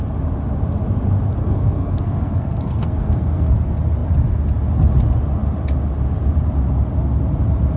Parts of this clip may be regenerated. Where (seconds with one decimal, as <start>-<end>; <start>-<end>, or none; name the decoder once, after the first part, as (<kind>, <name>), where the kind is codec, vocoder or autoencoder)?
1.4-3.5 (codec, SNAC)